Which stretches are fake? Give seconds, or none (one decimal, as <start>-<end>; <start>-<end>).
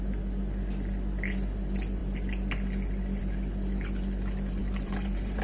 4.6-5.4